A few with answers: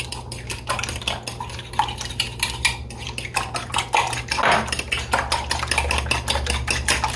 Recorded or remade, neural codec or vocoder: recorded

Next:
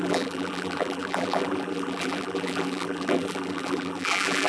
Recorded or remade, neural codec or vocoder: remade, vocoder, BigVGAN v2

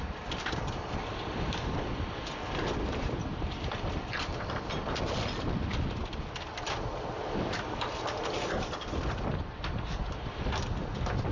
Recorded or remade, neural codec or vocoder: recorded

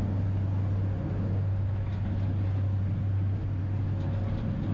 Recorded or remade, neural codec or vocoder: recorded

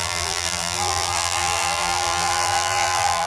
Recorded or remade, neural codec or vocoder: remade, vocoder, BigVGAN v2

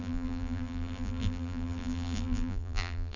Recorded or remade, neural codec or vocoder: remade, vocoder, BigVGAN v2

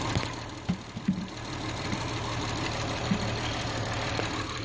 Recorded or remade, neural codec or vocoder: remade, vocoder, BigVGAN v2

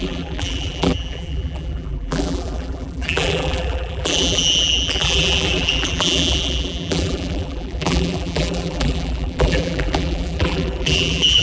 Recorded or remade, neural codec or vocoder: remade, vocoder, BigVGAN v2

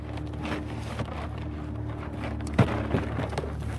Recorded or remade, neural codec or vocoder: remade, vocoder, BigVGAN v2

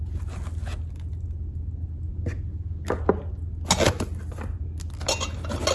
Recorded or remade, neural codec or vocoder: recorded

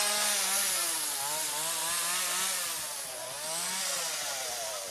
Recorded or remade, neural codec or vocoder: recorded